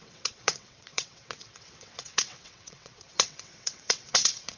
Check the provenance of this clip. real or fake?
fake